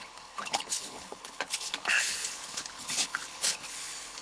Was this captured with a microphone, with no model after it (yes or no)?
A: no